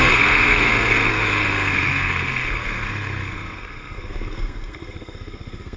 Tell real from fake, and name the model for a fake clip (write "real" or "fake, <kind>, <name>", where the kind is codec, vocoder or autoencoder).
fake, codec, SNAC